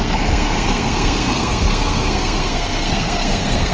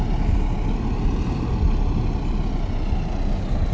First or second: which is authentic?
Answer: second